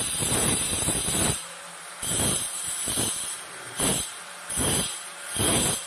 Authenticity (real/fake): fake